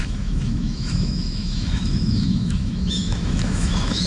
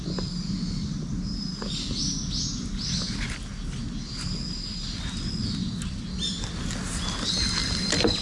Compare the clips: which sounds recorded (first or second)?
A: second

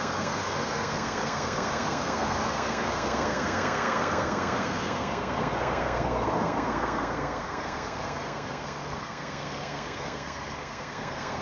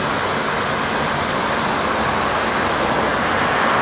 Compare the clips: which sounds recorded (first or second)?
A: second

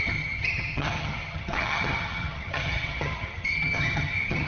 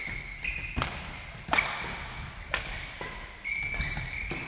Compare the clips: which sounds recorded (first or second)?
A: second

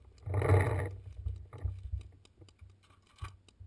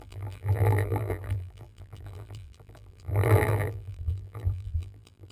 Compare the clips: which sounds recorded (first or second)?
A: first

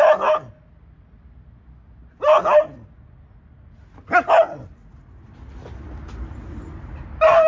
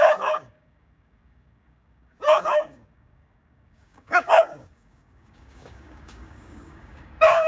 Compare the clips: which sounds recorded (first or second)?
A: first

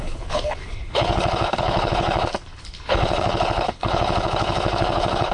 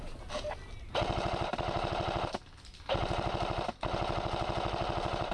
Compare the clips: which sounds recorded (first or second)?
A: second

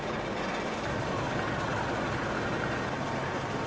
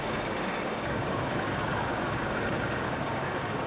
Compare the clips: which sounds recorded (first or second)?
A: first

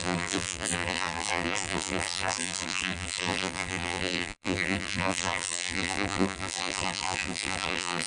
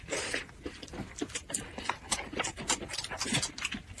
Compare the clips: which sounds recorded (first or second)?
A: second